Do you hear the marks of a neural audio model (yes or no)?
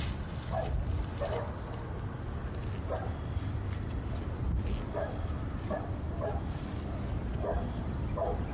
no